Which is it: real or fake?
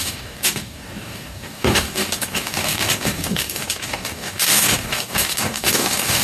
fake